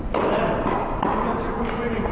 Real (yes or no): yes